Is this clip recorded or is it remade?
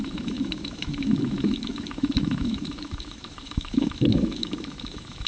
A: remade